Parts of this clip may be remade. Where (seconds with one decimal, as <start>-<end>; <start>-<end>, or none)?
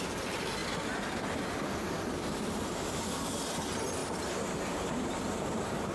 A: 0.0-0.6; 2.3-4.0; 4.7-5.9